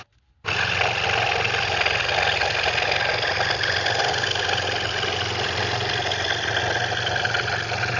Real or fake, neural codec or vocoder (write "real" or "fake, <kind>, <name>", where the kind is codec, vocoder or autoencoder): real